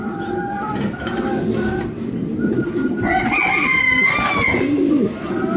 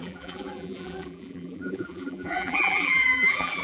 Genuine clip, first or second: first